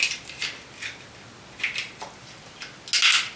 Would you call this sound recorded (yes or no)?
yes